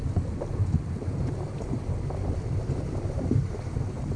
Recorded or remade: recorded